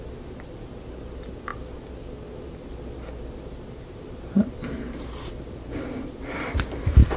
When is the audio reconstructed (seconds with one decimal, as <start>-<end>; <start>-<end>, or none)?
none